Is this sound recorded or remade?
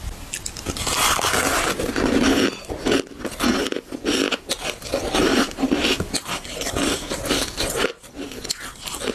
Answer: recorded